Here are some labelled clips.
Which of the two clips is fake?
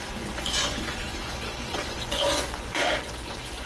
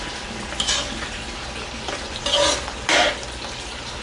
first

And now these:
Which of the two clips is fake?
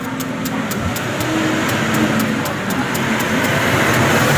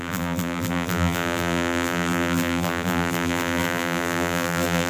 second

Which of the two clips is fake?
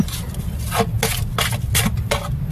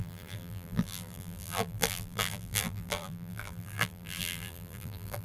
second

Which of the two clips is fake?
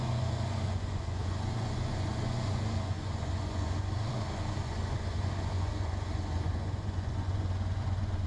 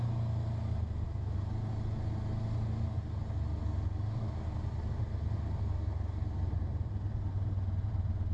first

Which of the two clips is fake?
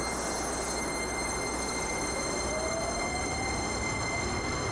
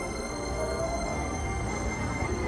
second